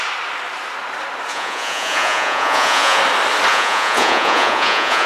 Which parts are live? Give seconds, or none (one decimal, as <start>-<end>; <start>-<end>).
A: 0.0-1.3; 3.0-3.5